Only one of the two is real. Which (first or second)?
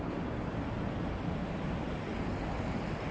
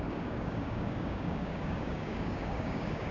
first